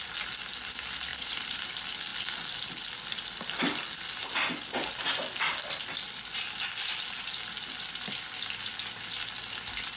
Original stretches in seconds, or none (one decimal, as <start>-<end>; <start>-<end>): 0.0-1.1; 1.7-10.0